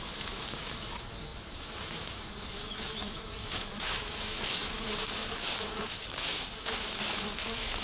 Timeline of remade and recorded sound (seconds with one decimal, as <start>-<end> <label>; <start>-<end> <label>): 0.0-7.8 remade